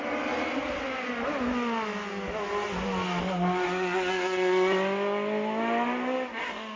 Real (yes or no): yes